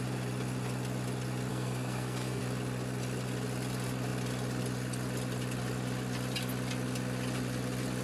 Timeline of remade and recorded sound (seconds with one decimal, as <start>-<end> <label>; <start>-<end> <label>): 0.0-1.5 recorded; 1.5-2.4 remade; 2.4-8.0 recorded